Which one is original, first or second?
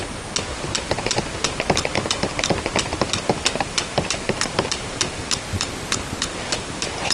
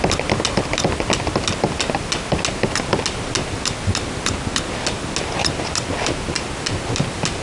second